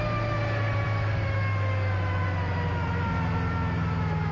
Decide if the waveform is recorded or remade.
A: recorded